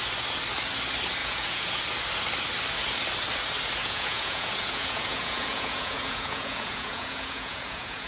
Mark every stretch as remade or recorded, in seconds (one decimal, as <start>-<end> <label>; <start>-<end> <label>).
0.0-1.2 recorded; 1.2-1.8 remade; 1.8-3.8 recorded; 3.8-8.1 remade